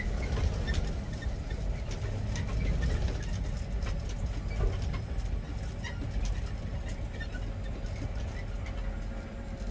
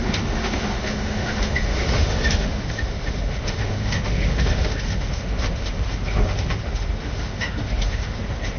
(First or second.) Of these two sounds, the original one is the first